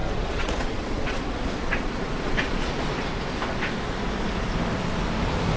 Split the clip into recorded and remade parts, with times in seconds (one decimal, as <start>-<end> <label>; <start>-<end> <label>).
0.0-3.1 remade; 3.1-5.6 recorded